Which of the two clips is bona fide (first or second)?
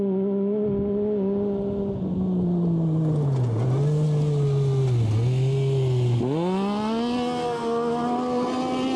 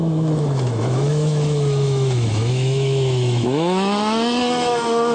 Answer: first